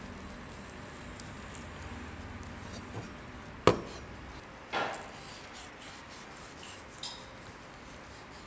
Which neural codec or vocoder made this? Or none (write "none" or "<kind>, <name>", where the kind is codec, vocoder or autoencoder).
none